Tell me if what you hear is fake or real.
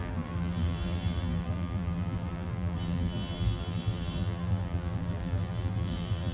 fake